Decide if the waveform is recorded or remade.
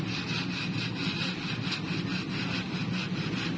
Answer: recorded